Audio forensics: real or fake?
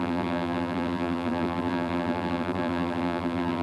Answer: fake